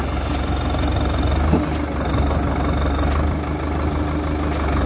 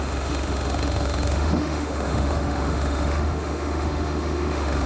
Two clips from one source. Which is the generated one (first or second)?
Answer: second